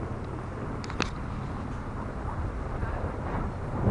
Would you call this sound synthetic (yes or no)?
no